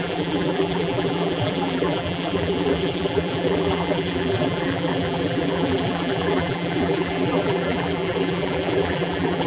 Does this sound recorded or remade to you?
remade